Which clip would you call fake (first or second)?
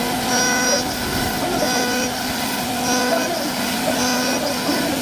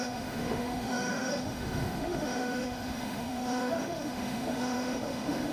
second